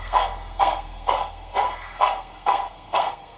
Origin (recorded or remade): remade